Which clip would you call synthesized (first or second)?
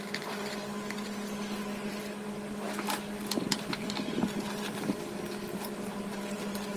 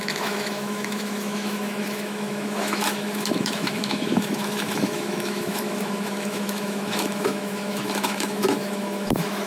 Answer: second